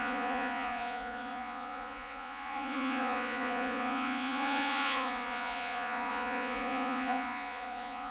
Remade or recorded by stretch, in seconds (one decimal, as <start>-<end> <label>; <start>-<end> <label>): 0.0-8.1 remade